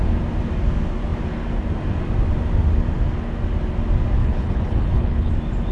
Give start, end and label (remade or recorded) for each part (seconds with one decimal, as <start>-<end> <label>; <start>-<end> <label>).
0.0-4.2 recorded; 4.2-5.3 remade; 5.3-5.7 recorded